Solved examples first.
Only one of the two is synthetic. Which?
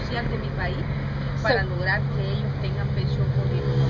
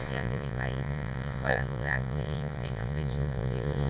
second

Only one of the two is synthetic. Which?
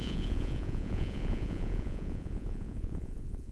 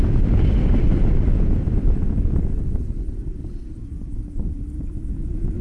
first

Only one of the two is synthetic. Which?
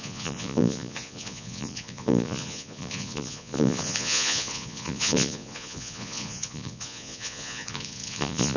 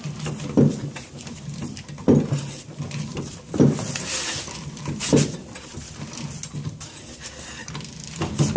first